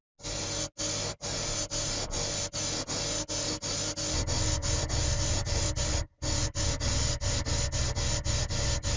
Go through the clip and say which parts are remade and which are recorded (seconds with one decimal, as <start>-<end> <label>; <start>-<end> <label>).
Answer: 0.0-4.6 recorded; 4.6-6.2 remade; 6.2-9.0 recorded